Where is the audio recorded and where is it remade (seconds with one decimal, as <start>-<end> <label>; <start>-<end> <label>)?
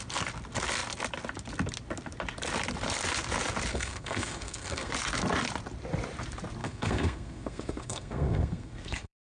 0.0-3.7 recorded; 3.7-4.9 remade; 4.9-6.6 recorded; 6.6-9.3 remade